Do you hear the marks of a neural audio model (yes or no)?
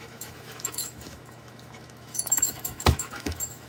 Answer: yes